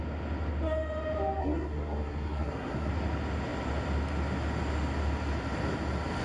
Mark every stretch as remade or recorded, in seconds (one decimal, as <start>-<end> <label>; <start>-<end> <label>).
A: 0.0-1.4 recorded; 1.4-2.9 remade; 2.9-6.2 recorded